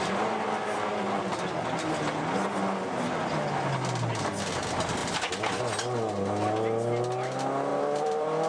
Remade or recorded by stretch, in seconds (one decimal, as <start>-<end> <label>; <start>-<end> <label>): 0.0-7.7 recorded; 7.7-8.5 remade